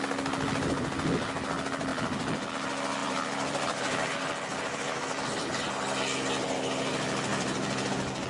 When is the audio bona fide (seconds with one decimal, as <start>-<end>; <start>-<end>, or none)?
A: 0.0-1.9; 2.5-3.0; 5.7-7.3; 7.9-8.3

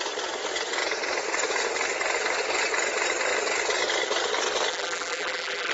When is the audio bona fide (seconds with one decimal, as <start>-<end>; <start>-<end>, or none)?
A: 0.0-4.7